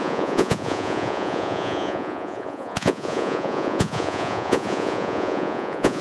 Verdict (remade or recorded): remade